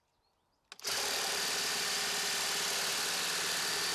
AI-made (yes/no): no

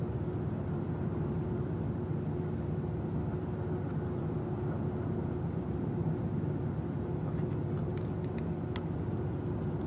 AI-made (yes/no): no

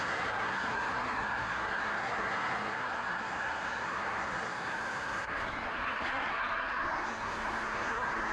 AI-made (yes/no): yes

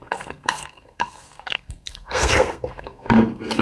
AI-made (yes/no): yes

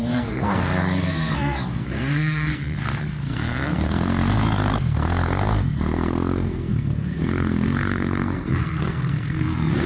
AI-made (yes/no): yes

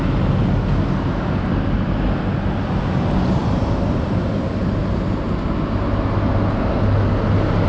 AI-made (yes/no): no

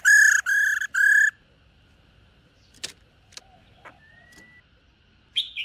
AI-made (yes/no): no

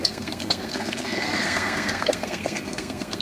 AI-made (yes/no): yes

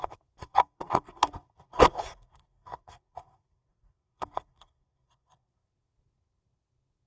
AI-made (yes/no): yes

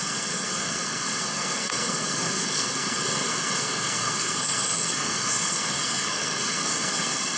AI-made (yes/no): yes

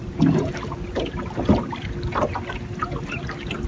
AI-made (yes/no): no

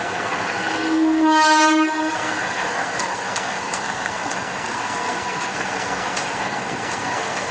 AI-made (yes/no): yes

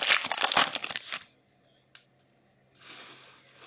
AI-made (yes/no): no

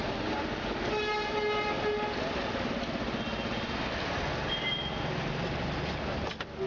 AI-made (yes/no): no